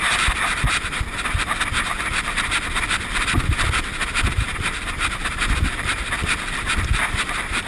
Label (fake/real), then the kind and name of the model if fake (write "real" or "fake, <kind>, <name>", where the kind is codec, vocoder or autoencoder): real